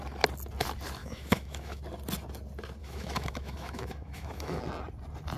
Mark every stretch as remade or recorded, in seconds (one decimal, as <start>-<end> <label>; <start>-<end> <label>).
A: 0.0-1.0 recorded; 1.0-1.8 remade; 1.8-2.8 recorded; 2.8-4.6 remade; 4.6-5.4 recorded